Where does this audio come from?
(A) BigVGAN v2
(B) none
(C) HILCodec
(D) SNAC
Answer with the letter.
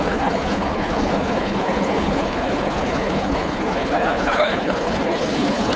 C